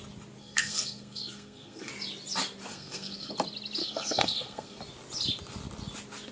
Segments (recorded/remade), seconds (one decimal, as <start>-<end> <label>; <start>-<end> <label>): 0.0-0.4 recorded; 0.4-1.9 remade; 1.9-2.7 recorded; 2.7-3.3 remade; 3.3-3.8 recorded; 3.8-4.8 remade; 4.8-6.3 recorded